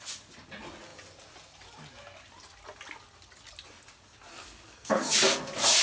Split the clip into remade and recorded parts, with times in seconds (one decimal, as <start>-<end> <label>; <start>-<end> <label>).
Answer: 0.0-4.3 recorded; 4.3-5.1 remade; 5.1-5.8 recorded